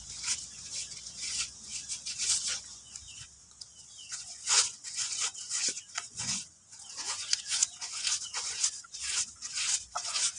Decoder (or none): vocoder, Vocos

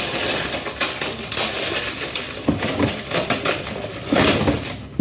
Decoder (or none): none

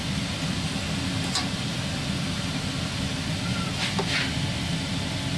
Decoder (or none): none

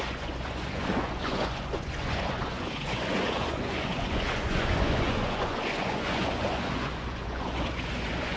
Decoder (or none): vocoder, Vocos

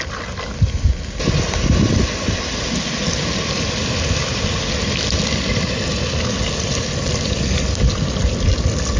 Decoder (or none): none